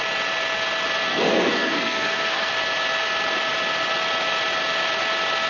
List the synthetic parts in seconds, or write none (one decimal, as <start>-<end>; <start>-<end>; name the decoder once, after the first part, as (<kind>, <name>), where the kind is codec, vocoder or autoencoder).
1.1-2.5 (codec, SNAC)